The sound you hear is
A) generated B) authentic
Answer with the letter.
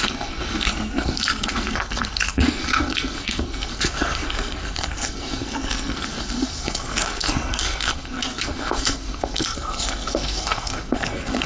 A